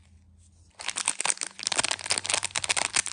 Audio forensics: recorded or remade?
recorded